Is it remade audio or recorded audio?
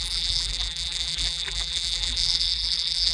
remade